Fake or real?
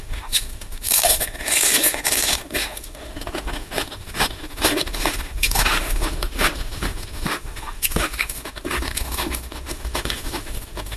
fake